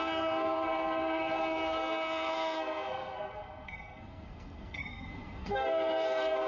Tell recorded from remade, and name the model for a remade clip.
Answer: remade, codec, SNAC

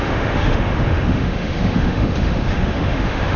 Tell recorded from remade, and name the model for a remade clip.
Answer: remade, autoencoder, DAC-VAE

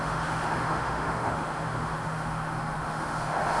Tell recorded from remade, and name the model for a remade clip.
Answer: remade, autoencoder, DAC-VAE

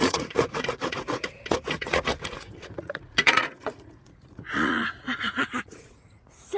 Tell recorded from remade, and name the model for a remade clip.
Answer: remade, vocoder, Vocos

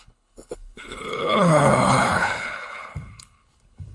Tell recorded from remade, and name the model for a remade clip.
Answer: remade, codec, HILCodec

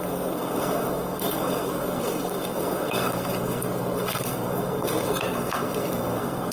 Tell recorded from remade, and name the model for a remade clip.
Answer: remade, codec, SNAC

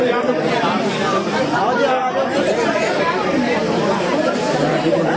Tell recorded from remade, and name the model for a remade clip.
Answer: remade, vocoder, BigVGAN v2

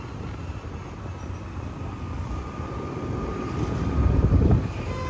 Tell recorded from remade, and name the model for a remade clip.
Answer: recorded